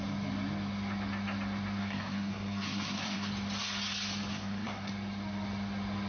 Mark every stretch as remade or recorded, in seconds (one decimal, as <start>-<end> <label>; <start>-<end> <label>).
0.0-1.8 recorded; 1.8-3.3 remade; 3.3-4.3 recorded; 4.3-4.9 remade; 4.9-6.1 recorded